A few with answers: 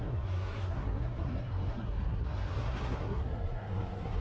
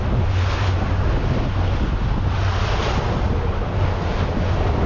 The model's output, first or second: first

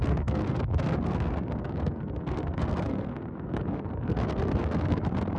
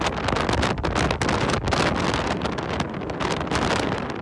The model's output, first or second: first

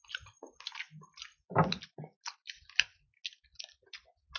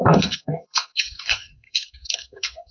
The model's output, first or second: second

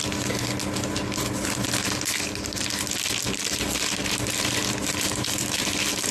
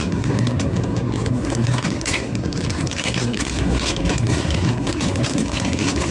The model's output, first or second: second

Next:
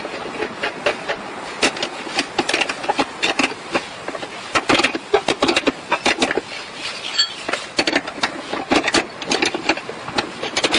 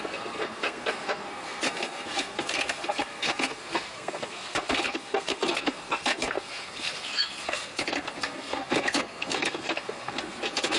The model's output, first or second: second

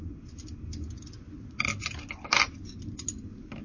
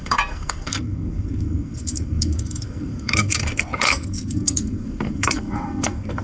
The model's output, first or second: second